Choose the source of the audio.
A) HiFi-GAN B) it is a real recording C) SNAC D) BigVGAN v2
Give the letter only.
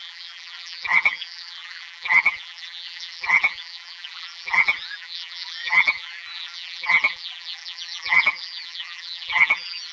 D